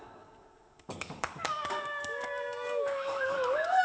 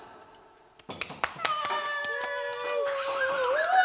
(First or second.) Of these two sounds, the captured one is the second